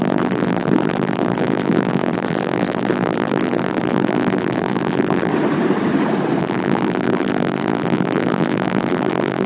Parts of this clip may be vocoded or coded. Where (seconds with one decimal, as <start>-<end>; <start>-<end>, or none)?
0.0-5.3; 6.4-9.5